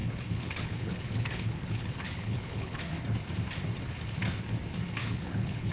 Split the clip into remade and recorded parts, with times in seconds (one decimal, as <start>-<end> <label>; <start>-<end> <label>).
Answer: 0.0-2.8 remade; 2.8-5.0 recorded; 5.0-5.7 remade